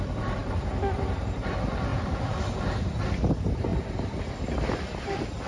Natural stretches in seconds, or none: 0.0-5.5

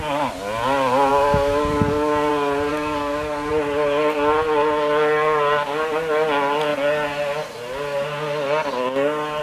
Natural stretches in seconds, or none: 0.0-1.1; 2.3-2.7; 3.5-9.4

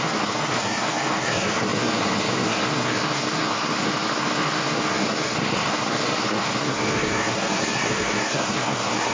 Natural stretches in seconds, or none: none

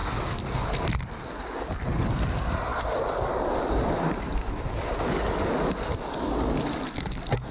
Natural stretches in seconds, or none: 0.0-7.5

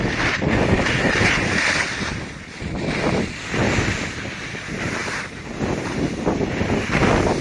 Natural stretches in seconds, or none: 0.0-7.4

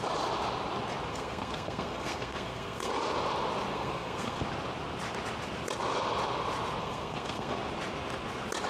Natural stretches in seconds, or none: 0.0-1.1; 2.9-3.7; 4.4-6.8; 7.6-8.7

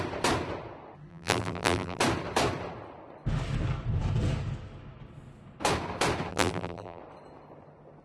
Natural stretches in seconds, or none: 0.0-1.1; 2.0-6.3; 7.0-8.0

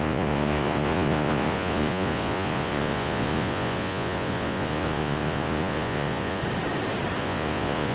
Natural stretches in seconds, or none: 6.4-7.2